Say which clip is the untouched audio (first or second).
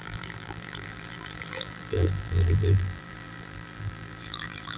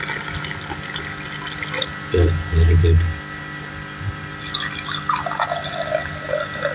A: second